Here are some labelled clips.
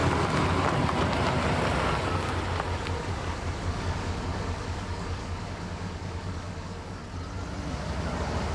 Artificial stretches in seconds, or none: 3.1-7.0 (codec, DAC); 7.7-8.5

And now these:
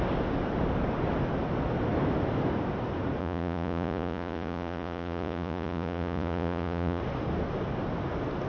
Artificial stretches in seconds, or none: 3.2-7.0 (vocoder, Vocos)

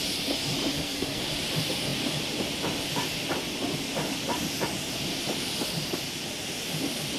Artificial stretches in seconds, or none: 0.7-1.2 (codec, SNAC)

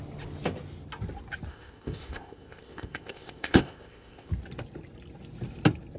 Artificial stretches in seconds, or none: 1.5-4.3 (codec, ZipCodec)